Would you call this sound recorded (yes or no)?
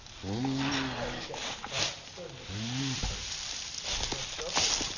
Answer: yes